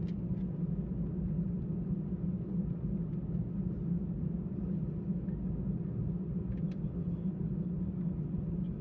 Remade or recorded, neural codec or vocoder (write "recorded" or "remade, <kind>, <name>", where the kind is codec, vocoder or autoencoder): recorded